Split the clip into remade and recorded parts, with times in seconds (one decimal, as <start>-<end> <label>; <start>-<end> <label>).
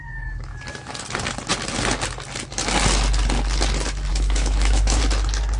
0.0-4.1 recorded; 4.1-5.0 remade; 5.0-5.6 recorded